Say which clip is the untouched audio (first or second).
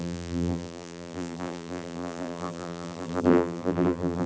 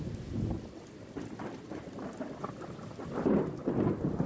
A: second